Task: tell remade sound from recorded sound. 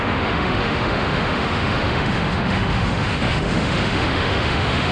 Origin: remade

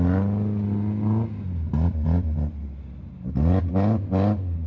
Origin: recorded